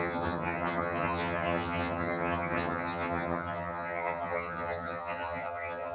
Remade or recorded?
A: remade